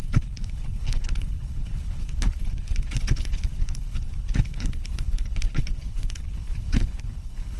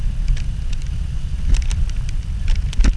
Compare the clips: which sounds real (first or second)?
second